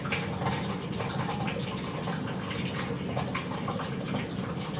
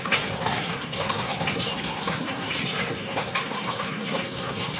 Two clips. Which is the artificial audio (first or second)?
second